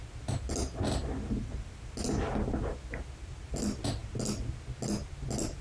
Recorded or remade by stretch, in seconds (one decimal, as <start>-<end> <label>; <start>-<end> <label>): 0.0-5.6 recorded